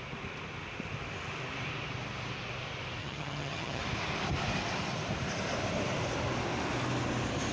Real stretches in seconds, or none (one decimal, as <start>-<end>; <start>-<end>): 0.0-3.0; 3.8-7.5